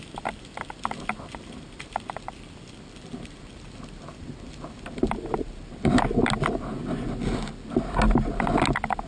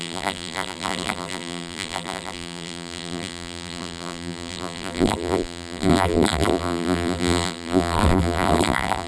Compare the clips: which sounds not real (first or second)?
second